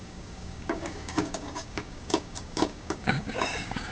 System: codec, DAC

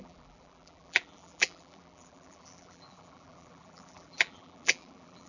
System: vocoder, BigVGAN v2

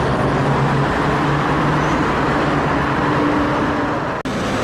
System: none